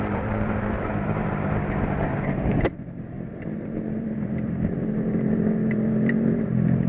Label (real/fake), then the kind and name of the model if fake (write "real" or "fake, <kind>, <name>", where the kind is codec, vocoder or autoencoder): fake, vocoder, BigVGAN v2